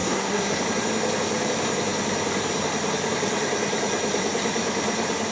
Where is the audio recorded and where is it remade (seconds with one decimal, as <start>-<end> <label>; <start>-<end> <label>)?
0.0-0.6 remade; 0.6-5.3 recorded